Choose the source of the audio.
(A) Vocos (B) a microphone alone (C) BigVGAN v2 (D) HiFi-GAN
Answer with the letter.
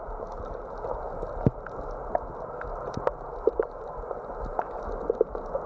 B